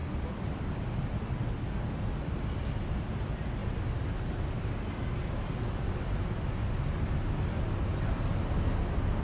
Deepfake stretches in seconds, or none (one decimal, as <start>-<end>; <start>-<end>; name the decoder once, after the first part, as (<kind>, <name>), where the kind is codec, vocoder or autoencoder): 0.0-0.6 (vocoder, BigVGAN v2); 3.6-4.6; 5.2-7.2; 7.9-8.4